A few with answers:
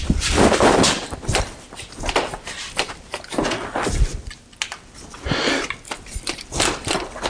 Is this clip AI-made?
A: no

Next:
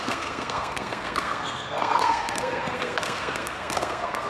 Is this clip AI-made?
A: yes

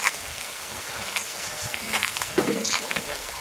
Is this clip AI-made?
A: yes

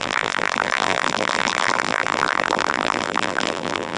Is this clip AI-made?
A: yes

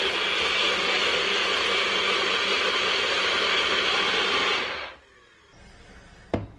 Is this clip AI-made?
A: no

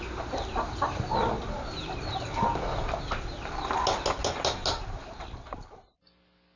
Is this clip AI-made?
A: no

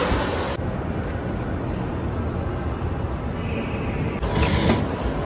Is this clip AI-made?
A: no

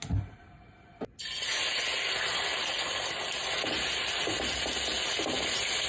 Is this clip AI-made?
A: no